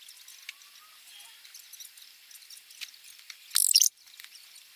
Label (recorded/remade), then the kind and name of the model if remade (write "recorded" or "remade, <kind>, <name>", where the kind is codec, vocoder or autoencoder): recorded